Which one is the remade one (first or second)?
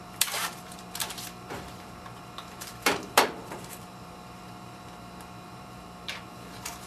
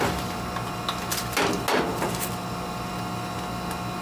first